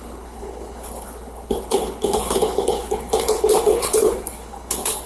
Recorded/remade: remade